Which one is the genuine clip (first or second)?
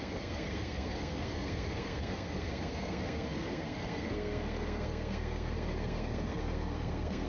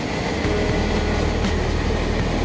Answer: second